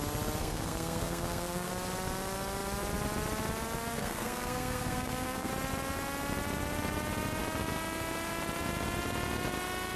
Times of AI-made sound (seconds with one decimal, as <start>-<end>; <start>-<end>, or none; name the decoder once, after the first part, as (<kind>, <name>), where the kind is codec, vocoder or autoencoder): 0.4-1.7 (codec, SNAC); 3.9-5.5